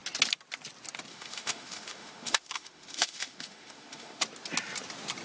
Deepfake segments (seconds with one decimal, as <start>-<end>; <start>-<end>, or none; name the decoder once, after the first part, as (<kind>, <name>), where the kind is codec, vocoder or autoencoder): 1.1-4.2 (autoencoder, DAC-VAE)